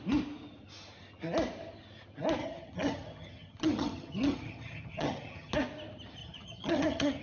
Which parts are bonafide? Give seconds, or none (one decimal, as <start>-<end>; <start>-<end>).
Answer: 0.0-2.4; 5.5-6.2